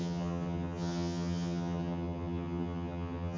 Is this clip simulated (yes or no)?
yes